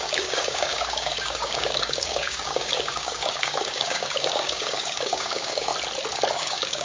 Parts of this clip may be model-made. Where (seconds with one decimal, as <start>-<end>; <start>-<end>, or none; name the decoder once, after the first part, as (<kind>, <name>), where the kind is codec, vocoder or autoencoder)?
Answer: 0.0-5.7 (codec, DAC); 6.3-6.8